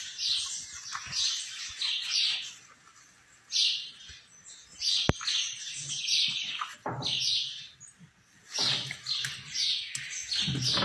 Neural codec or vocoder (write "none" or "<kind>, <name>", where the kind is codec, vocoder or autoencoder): none